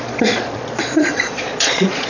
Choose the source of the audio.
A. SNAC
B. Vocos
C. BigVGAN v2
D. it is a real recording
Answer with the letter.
B